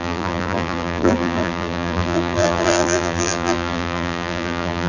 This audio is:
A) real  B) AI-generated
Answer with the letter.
B